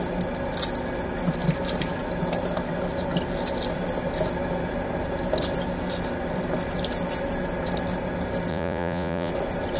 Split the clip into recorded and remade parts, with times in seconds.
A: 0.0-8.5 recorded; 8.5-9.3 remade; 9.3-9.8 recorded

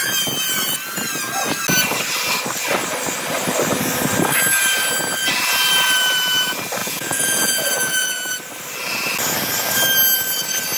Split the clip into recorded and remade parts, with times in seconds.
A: 0.0-6.8 recorded; 6.8-8.4 remade; 8.4-10.8 recorded

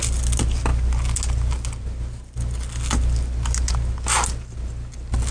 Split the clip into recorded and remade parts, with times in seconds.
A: 0.0-5.3 recorded

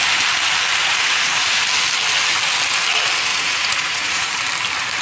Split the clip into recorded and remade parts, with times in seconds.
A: 0.0-0.8 recorded; 0.8-1.6 remade; 1.6-3.3 recorded; 3.3-4.3 remade; 4.3-5.0 recorded